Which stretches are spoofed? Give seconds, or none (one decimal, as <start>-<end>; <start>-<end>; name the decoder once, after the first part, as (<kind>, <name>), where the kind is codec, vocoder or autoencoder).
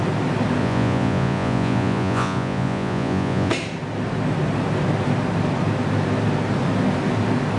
0.6-3.5 (vocoder, Vocos)